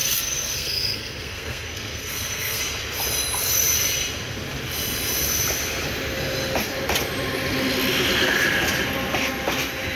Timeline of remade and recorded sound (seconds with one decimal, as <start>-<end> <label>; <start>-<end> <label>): 0.0-2.6 remade; 2.6-10.0 recorded